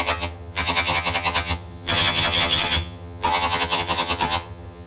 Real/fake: fake